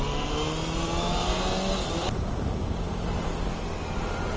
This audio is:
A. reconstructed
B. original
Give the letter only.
B